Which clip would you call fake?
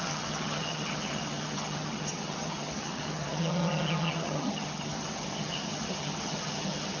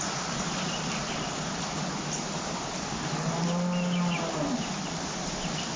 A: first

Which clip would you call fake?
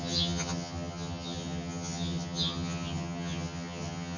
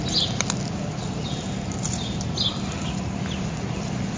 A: first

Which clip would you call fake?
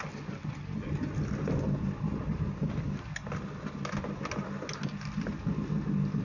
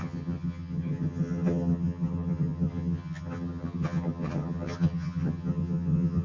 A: second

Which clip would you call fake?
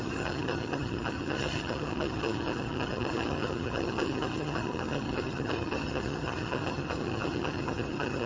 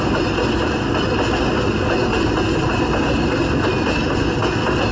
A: first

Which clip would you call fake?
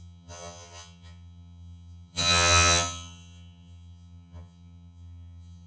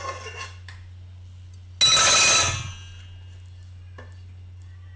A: first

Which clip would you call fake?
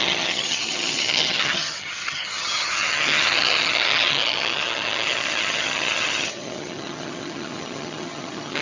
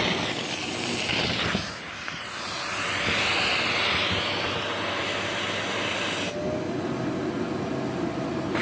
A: first